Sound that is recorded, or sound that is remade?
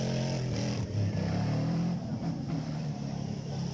remade